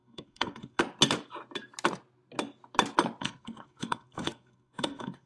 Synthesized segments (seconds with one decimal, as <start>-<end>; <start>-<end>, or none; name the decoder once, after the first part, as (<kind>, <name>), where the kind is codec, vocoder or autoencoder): 0.0-0.8 (codec, SNAC); 3.2-5.3